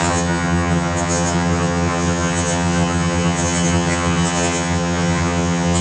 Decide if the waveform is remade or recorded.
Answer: remade